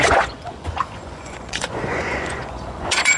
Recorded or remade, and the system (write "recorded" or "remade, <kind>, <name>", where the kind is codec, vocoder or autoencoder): remade, vocoder, Vocos